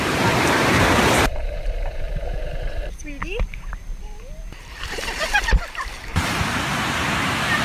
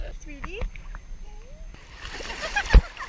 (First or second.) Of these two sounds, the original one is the second